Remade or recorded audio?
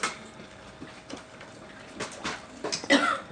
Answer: recorded